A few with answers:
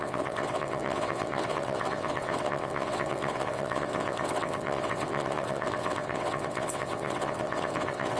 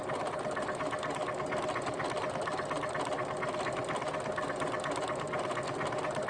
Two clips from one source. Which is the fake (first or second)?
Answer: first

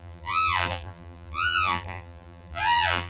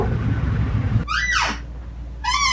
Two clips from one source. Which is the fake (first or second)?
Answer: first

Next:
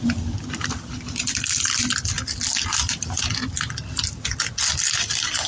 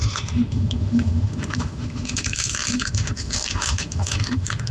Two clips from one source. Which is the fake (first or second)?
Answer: second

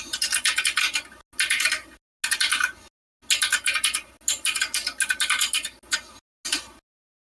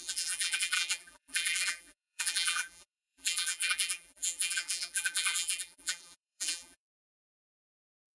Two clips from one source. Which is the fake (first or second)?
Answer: second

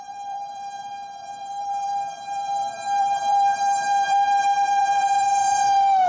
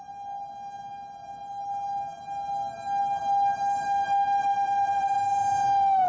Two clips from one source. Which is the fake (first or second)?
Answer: first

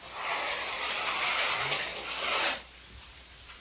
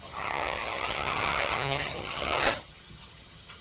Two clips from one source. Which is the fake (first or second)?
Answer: second